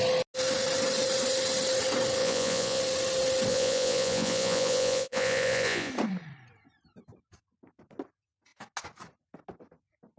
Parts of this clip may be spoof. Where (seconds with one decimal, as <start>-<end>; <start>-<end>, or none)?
2.2-2.8; 3.5-5.9